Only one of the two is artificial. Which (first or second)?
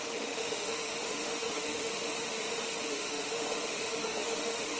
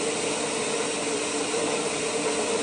first